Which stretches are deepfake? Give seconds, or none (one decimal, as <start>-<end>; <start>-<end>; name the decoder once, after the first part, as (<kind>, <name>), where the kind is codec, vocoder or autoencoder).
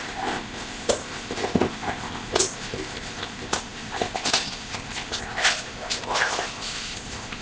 0.0-7.4 (codec, ZipCodec)